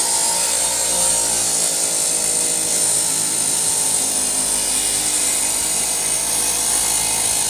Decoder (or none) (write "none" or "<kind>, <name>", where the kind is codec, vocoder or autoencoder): none